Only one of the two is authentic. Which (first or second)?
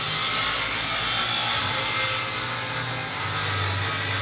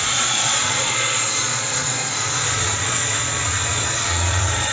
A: first